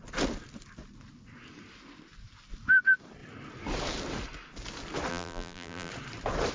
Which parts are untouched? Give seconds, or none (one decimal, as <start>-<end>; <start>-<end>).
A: 0.0-5.1; 5.9-6.5